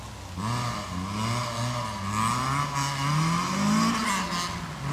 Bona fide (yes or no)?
yes